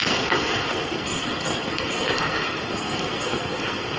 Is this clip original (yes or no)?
no